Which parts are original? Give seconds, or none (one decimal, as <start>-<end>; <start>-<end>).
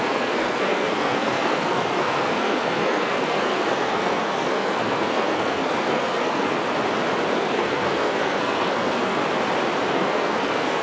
6.6-7.3; 9.2-9.9